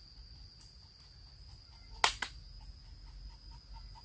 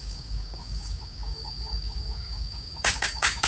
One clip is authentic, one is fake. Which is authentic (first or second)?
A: first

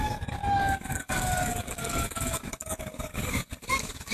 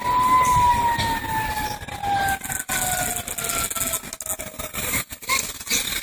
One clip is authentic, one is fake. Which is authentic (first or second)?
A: second